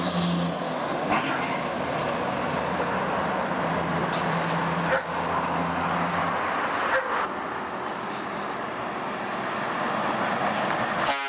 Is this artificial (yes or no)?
no